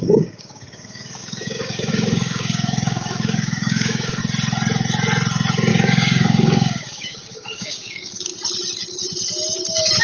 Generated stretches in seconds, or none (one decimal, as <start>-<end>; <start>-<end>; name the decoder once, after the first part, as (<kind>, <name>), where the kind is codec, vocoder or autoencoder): 0.0-4.2 (codec, DAC); 5.7-8.3